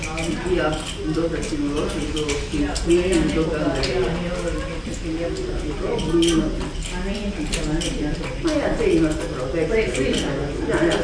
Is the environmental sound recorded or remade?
recorded